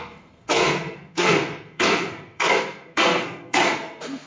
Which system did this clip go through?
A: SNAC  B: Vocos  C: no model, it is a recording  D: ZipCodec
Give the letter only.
A